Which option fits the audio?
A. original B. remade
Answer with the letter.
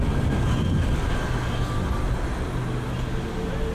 A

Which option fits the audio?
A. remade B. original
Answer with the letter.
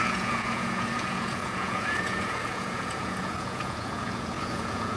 A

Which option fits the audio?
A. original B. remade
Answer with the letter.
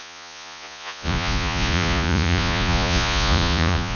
B